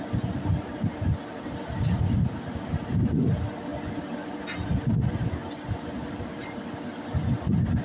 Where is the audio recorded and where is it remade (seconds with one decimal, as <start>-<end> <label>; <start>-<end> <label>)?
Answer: 0.0-7.8 recorded